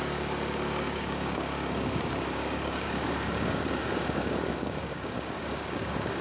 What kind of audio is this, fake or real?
fake